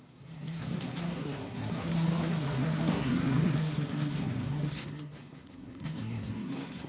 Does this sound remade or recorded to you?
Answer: remade